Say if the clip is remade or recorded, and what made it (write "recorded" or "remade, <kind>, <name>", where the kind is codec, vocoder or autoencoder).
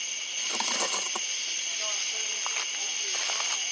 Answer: recorded